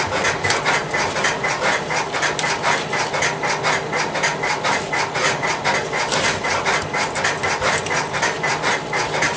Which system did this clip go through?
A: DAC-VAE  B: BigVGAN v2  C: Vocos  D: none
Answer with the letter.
D